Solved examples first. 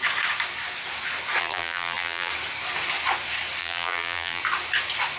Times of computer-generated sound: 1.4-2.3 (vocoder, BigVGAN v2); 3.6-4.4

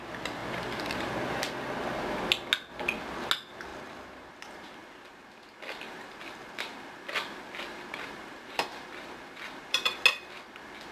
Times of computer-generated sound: 0.4-1.1 (vocoder, BigVGAN v2); 3.7-4.3; 4.8-10.0

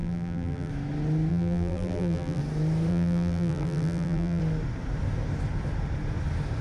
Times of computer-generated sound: 0.0-0.7 (vocoder, BigVGAN v2); 1.3-2.4; 2.9-4.4